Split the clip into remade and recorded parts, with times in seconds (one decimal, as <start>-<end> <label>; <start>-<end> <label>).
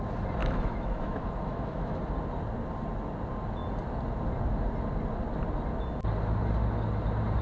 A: 0.0-0.4 recorded; 0.4-2.0 remade; 2.0-7.4 recorded